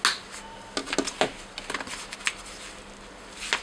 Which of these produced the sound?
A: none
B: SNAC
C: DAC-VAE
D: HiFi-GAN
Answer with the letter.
A